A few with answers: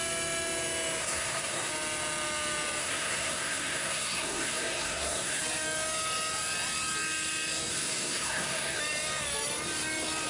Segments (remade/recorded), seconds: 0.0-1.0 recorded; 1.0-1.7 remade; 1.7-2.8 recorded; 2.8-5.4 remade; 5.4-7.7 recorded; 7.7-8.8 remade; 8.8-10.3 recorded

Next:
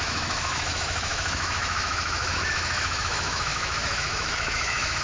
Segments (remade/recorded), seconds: 0.0-5.0 remade

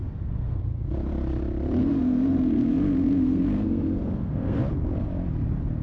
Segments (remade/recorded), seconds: 0.0-0.6 remade; 0.6-1.8 recorded; 1.8-4.6 remade; 4.6-5.8 recorded

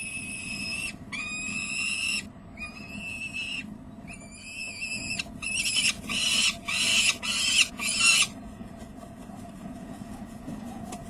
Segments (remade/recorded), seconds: 0.0-6.9 recorded; 6.9-8.7 remade; 8.7-9.6 recorded; 9.6-11.1 remade

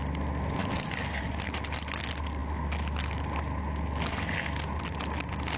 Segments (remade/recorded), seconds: 0.0-0.6 recorded; 0.6-1.2 remade; 1.2-5.6 recorded

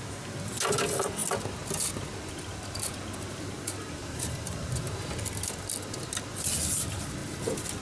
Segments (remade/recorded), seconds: 0.0-4.0 recorded; 4.0-4.7 remade; 4.7-7.8 recorded

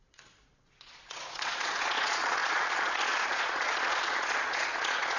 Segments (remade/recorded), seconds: 0.0-5.2 remade

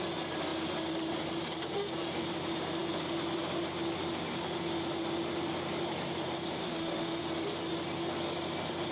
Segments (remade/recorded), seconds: 0.0-6.6 recorded; 6.6-7.2 remade; 7.2-8.9 recorded